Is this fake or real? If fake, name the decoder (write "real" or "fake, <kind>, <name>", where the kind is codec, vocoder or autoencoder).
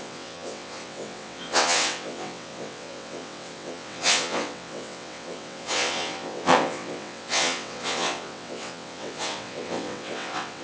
fake, vocoder, WaveNeXt